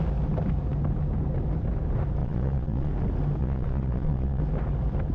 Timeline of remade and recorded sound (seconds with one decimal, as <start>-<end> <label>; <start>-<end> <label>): 0.0-2.2 recorded; 2.2-2.9 remade; 2.9-3.4 recorded; 3.4-4.4 remade; 4.4-5.1 recorded